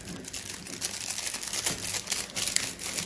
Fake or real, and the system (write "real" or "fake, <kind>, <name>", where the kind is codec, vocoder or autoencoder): real